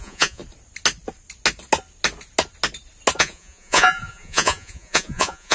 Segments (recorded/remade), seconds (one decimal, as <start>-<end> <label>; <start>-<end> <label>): 0.0-0.4 remade; 0.4-3.2 recorded; 3.2-5.5 remade